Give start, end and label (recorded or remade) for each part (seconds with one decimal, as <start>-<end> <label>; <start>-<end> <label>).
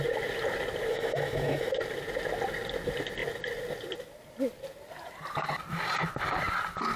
0.0-0.9 recorded; 0.9-1.7 remade; 1.7-7.0 recorded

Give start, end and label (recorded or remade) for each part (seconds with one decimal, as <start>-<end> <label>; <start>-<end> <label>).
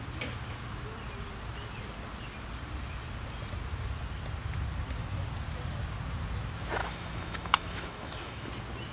0.0-6.8 recorded; 6.8-8.5 remade; 8.5-8.9 recorded